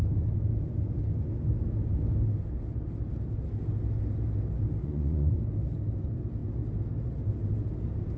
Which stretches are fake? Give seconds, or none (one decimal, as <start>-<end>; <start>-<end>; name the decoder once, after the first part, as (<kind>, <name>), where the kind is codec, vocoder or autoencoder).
4.8-5.4 (vocoder, Vocos)